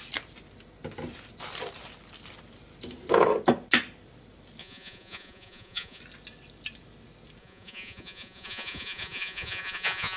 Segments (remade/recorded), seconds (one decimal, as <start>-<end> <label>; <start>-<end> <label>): 0.0-4.6 recorded; 4.6-6.0 remade; 6.0-7.4 recorded; 7.4-10.2 remade